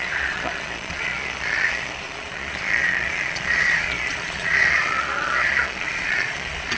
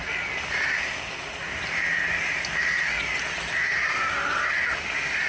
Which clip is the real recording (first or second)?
second